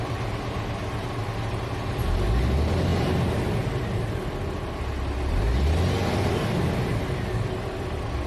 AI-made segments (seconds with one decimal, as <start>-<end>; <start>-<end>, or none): none